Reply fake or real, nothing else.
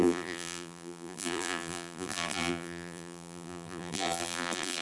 fake